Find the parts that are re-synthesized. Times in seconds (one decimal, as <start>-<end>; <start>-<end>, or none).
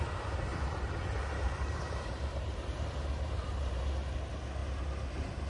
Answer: 0.5-3.8